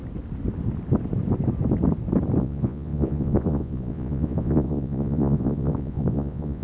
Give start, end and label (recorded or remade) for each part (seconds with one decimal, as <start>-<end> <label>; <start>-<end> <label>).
0.0-2.4 recorded; 2.4-6.6 remade